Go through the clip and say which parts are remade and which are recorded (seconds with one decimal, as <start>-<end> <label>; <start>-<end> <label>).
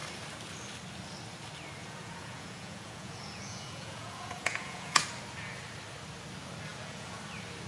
0.0-1.8 recorded; 1.8-5.0 remade; 5.0-6.7 recorded; 6.7-7.2 remade; 7.2-7.7 recorded